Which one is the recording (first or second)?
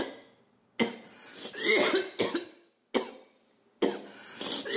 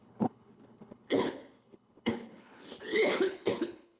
first